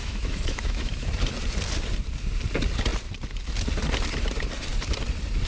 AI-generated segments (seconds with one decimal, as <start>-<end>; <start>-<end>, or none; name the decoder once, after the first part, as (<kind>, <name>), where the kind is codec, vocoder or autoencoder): 0.0-1.1 (autoencoder, DAC-VAE)